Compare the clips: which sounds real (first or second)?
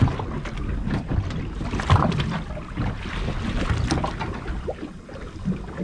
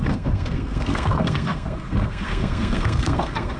first